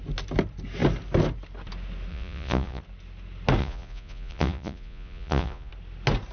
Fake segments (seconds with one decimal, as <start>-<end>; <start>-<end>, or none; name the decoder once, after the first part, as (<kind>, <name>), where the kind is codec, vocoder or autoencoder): 2.1-2.8 (vocoder, Vocos); 3.6-5.7